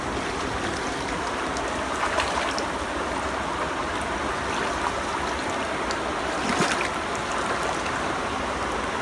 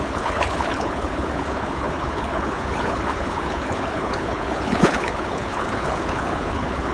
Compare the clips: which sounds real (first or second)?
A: first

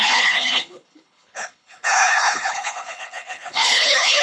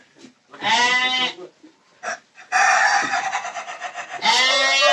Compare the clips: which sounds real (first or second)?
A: second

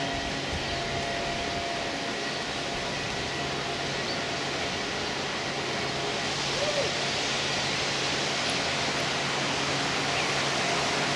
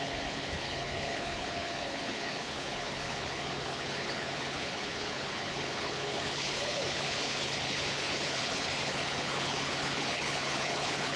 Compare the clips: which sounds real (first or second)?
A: first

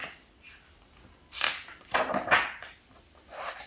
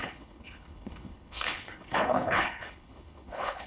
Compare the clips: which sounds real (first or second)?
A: first